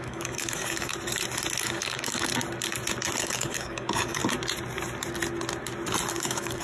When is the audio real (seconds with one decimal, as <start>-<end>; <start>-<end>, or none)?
0.9-1.6; 2.3-3.2; 4.2-6.1